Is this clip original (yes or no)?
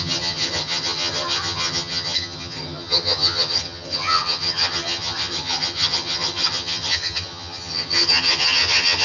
no